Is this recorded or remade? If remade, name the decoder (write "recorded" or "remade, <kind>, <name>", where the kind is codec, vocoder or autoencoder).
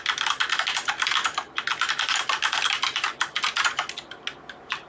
recorded